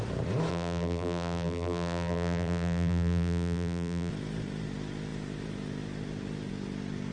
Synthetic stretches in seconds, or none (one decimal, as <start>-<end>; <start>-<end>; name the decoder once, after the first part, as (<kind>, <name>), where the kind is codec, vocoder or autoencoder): 0.5-4.1 (vocoder, BigVGAN v2)